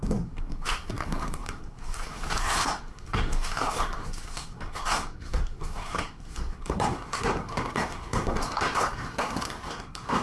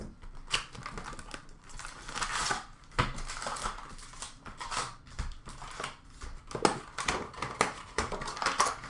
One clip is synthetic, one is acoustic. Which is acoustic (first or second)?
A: second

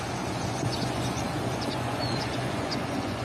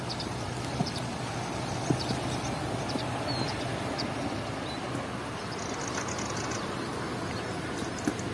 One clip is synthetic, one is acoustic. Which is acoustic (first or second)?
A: second